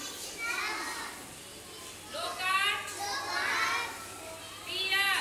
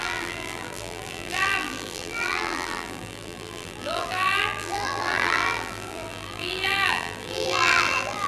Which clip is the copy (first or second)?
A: second